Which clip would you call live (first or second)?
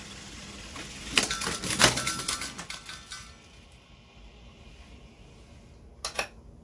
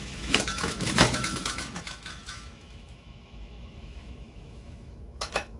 first